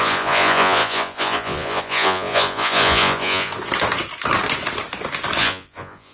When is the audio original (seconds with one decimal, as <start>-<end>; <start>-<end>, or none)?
3.5-5.4